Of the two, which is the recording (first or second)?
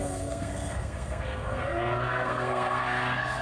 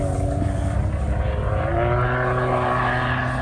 second